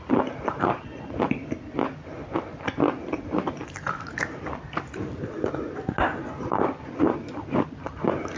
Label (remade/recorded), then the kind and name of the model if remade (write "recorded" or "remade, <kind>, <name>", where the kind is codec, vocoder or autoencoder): recorded